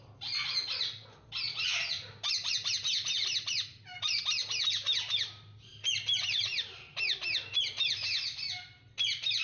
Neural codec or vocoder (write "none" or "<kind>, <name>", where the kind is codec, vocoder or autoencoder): none